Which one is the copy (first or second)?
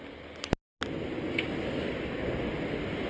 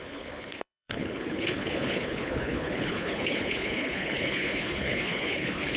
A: second